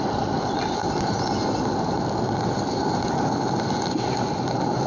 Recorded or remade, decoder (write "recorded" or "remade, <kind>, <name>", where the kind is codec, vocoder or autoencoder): recorded